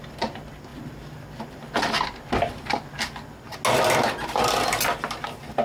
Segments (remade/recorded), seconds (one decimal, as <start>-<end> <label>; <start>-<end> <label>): 0.0-0.7 recorded; 0.7-1.9 remade; 1.9-5.6 recorded